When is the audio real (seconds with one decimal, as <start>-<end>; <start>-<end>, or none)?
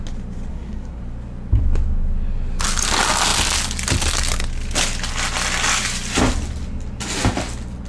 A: 0.0-0.5; 1.0-7.9